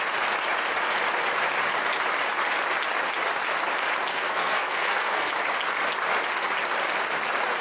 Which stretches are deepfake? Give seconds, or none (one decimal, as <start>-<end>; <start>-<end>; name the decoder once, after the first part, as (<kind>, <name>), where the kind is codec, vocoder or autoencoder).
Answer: 4.1-5.3 (codec, SNAC)